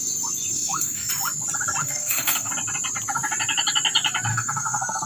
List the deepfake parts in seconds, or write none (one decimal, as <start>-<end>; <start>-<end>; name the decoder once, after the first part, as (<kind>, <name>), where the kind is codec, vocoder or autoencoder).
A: 0.5-1.1 (codec, SNAC); 1.8-2.5; 4.3-5.1